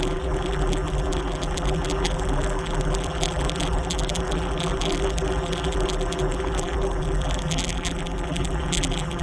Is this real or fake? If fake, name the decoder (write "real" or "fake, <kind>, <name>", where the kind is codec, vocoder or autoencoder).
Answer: fake, vocoder, BigVGAN v2